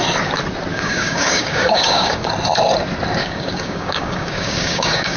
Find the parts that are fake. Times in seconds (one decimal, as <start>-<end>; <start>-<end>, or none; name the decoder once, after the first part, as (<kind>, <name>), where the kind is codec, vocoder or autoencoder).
0.7-2.3 (codec, DAC); 3.2-5.2

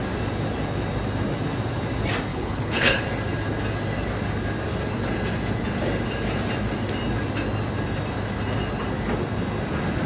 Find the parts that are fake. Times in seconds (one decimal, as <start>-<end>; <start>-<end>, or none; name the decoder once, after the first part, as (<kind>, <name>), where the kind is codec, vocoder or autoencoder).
2.3-3.0 (codec, HILCodec)